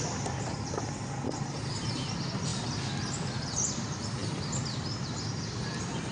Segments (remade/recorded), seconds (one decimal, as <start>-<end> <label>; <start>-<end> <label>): 0.0-2.5 recorded; 2.5-3.7 remade; 3.7-4.2 recorded; 4.2-6.1 remade